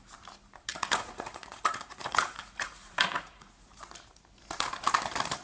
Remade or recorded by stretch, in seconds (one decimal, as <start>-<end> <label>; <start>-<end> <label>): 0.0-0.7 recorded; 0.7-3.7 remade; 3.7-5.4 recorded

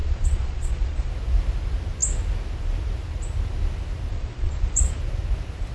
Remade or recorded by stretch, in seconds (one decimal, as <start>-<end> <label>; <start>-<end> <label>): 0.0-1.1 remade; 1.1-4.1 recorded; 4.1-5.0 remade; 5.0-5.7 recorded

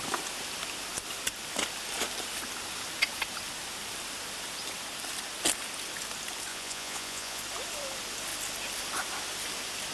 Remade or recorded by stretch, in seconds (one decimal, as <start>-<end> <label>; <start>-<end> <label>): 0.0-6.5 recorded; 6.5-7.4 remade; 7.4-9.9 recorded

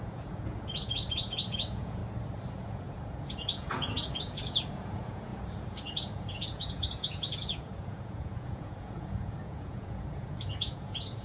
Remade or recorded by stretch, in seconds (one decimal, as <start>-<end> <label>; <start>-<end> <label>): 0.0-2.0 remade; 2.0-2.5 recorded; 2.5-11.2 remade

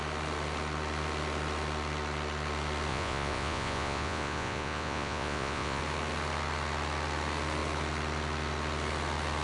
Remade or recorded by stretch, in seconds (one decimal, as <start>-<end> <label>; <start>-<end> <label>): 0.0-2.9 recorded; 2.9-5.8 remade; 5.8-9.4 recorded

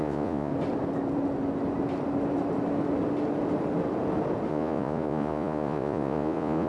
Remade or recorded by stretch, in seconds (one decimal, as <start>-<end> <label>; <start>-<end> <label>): 0.0-0.5 remade; 0.5-4.5 recorded; 4.5-6.7 remade

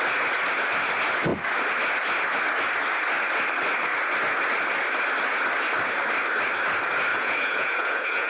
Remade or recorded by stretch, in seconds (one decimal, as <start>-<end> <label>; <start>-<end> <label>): 0.0-7.1 recorded; 7.1-8.3 remade

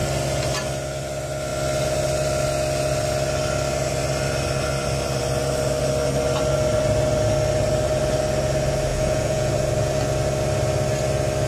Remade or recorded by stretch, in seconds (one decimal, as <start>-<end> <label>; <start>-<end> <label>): 0.0-8.9 recorded; 8.9-9.5 remade; 9.5-11.5 recorded